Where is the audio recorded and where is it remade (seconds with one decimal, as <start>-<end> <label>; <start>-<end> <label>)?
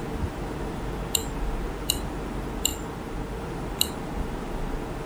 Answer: 0.0-5.1 recorded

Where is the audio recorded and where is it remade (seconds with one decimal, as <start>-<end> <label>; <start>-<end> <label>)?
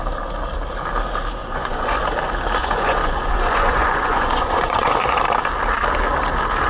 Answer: 0.0-1.4 recorded; 1.4-2.0 remade; 2.0-2.6 recorded; 2.6-5.2 remade; 5.2-6.7 recorded